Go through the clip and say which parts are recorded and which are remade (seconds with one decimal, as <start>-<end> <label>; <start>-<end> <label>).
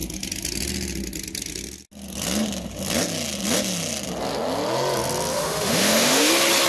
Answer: 0.0-5.3 recorded; 5.3-6.3 remade; 6.3-6.7 recorded